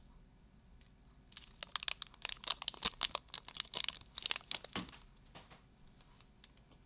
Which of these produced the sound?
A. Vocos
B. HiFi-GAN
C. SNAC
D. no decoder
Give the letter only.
D